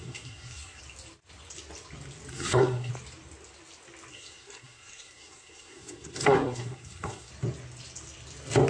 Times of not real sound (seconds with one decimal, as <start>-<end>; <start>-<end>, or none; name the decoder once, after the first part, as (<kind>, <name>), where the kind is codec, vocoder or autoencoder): 0.0-0.8 (codec, SNAC); 2.3-2.9; 4.1-7.3

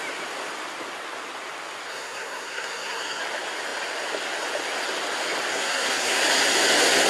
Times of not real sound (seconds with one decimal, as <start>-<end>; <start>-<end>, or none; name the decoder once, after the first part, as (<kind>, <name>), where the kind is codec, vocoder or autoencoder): 1.9-3.2 (codec, SNAC); 5.5-6.2

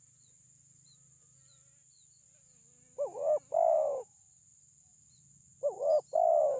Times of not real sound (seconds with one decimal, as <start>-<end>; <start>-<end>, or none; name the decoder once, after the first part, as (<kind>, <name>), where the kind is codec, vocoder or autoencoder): none

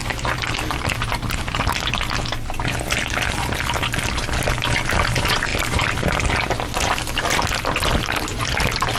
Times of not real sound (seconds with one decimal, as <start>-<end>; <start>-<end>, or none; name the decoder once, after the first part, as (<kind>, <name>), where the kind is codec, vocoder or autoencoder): none

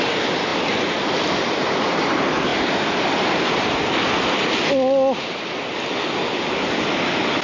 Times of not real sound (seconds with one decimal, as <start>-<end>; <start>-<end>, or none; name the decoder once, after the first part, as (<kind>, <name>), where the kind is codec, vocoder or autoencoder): none

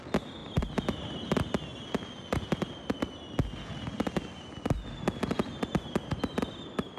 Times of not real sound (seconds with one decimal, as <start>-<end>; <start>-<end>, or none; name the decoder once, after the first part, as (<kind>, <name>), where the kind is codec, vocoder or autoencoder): none

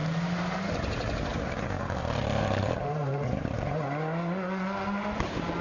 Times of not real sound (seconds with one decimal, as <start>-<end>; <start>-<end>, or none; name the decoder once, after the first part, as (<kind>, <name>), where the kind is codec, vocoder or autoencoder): 0.0-0.7 (vocoder, BigVGAN v2); 1.3-3.7